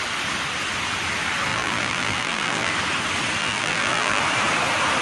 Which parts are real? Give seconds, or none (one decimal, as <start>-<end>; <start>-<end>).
0.0-1.5; 2.7-3.4; 4.2-5.0